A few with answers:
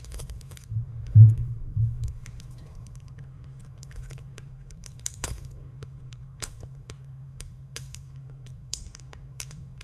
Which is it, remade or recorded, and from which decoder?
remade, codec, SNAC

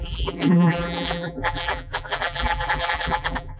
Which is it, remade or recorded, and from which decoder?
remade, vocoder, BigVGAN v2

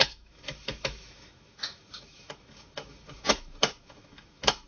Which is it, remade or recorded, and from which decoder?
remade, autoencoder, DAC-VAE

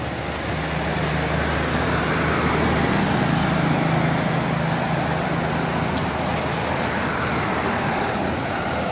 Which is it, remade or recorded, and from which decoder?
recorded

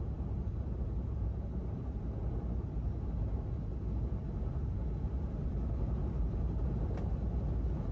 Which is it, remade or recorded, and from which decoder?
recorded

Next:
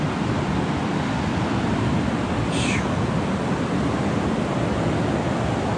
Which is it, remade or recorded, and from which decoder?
recorded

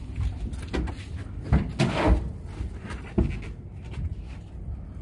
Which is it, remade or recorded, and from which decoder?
recorded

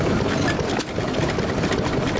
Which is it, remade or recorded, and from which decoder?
recorded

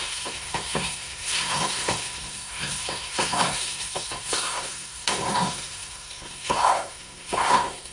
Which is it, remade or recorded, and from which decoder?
remade, codec, SNAC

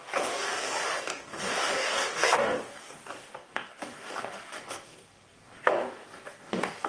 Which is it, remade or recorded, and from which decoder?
remade, codec, DAC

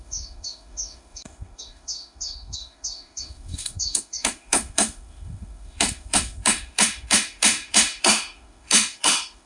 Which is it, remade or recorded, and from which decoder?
remade, autoencoder, DAC-VAE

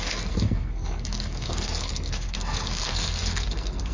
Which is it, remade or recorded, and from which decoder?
remade, codec, SNAC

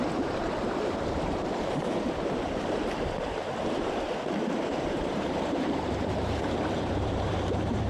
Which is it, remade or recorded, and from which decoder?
remade, vocoder, BigVGAN v2